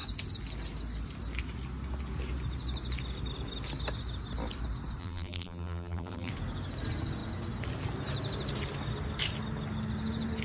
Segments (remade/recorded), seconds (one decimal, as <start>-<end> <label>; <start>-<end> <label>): 0.0-5.0 recorded; 5.0-6.3 remade; 6.3-10.4 recorded